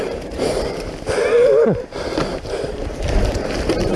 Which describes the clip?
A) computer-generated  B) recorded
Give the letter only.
A